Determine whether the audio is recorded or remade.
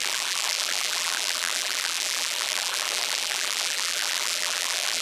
remade